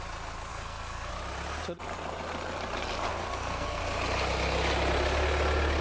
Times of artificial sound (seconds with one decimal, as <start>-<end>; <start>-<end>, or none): 0.5-1.1; 3.1-3.8